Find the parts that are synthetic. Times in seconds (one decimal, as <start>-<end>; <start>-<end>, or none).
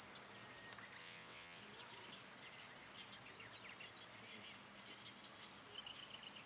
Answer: 1.0-1.6